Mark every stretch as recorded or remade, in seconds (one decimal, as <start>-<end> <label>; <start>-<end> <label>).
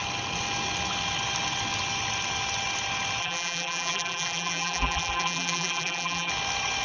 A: 0.0-3.2 recorded; 3.2-6.3 remade; 6.3-6.8 recorded